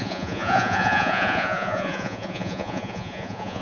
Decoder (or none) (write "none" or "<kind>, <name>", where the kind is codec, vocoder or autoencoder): vocoder, Vocos